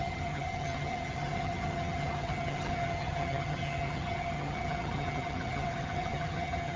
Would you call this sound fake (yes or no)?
yes